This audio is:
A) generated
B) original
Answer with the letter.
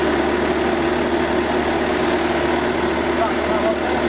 B